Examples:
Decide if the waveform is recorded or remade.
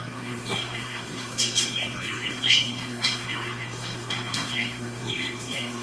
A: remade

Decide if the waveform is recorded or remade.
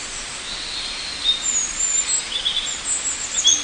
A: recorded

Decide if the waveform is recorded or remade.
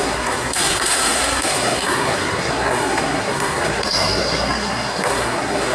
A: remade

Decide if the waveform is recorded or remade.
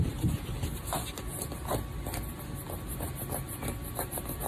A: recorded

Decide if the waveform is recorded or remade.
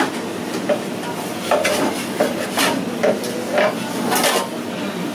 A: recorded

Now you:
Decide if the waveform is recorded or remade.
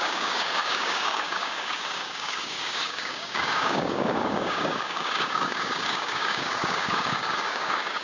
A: remade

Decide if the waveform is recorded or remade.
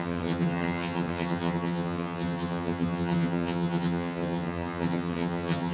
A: remade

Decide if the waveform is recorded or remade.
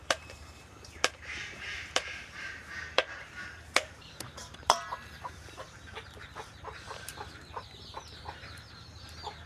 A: remade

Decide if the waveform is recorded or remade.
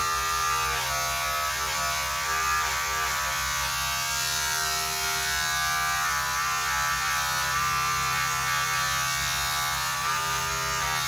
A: recorded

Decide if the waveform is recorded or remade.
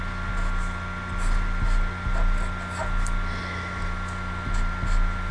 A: recorded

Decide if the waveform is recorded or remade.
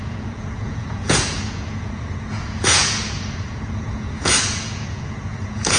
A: remade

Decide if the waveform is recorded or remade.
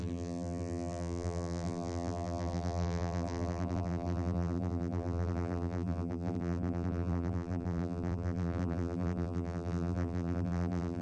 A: remade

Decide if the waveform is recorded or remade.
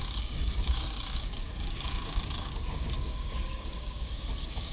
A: remade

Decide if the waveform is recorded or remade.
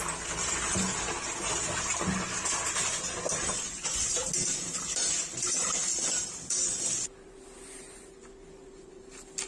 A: recorded